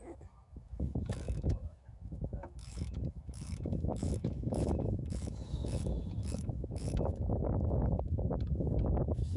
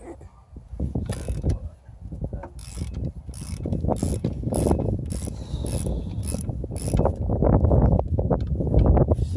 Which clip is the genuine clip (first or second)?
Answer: second